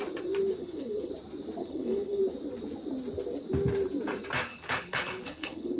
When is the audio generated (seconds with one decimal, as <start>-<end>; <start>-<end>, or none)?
0.6-1.1; 1.6-2.2; 4.5-5.8